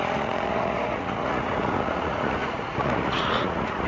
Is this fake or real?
fake